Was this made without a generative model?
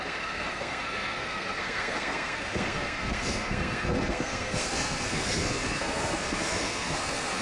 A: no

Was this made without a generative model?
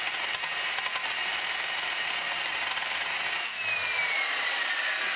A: yes